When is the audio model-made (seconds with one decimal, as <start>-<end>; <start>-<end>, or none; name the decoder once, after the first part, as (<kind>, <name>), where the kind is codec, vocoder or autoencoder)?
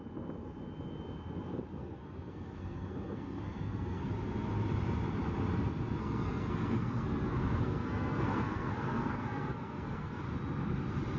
1.8-4.1 (codec, SNAC); 6.0-10.2